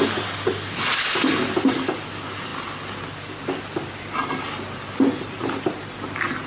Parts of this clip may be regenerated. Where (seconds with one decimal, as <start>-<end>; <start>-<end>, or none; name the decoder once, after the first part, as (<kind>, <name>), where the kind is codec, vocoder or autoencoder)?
none